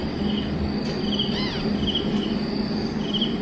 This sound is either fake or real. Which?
real